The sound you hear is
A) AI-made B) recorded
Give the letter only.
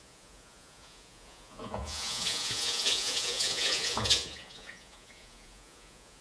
A